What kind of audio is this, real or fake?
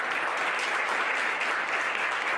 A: fake